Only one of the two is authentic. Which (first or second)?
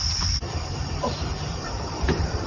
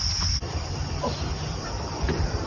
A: second